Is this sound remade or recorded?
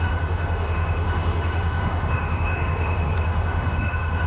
remade